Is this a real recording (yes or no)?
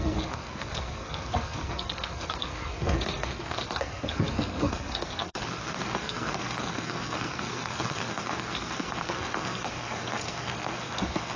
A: no